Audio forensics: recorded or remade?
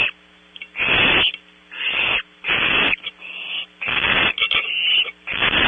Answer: recorded